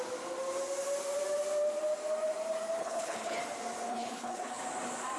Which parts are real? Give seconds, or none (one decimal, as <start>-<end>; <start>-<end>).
0.0-2.8; 3.4-3.9; 4.6-5.2